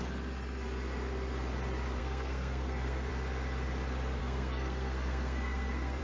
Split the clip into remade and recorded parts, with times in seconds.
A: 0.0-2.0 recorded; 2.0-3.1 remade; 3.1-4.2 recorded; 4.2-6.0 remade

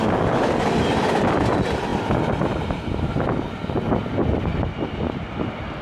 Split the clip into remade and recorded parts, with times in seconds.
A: 0.0-5.8 recorded